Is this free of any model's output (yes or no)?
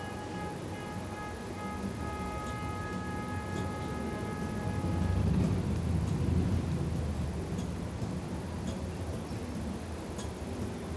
yes